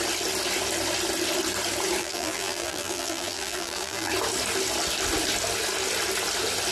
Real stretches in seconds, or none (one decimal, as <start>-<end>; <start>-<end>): 0.0-2.0; 4.1-6.7